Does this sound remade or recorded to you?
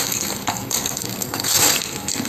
remade